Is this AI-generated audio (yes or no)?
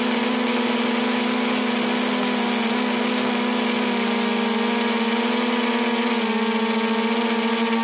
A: no